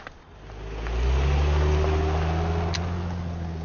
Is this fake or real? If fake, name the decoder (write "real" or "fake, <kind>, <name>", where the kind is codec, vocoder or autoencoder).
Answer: real